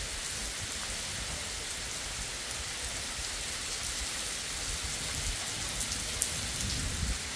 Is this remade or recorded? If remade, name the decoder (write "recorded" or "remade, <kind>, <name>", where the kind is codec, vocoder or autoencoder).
recorded